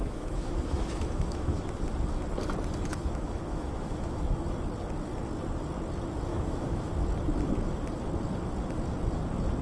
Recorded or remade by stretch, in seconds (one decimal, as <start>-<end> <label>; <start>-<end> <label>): 0.0-1.6 remade; 1.6-2.9 recorded; 2.9-4.2 remade; 4.2-6.3 recorded; 6.3-6.9 remade; 6.9-9.6 recorded